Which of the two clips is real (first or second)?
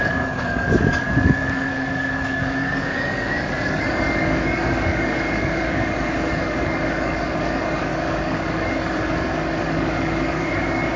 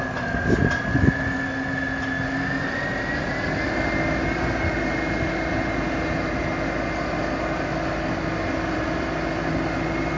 second